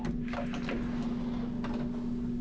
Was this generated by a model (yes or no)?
no